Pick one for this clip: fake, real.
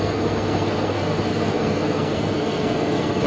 fake